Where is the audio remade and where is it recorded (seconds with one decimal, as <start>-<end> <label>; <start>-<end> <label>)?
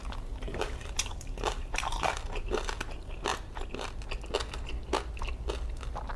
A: 0.0-0.5 recorded; 0.5-2.1 remade; 2.1-6.2 recorded